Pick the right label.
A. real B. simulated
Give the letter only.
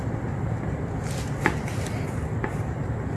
A